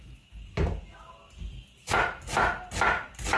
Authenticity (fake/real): real